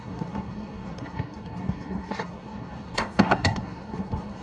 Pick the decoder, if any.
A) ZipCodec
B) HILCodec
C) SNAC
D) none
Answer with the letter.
C